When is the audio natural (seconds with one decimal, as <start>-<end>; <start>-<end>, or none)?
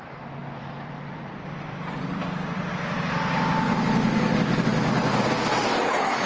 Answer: 0.0-0.4; 2.6-4.7; 5.6-6.3